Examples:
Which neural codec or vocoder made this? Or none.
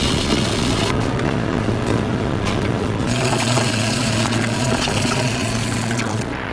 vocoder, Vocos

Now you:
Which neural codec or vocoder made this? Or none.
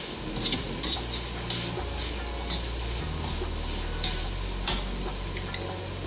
none